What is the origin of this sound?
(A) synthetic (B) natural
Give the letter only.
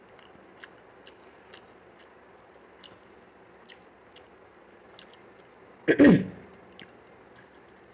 B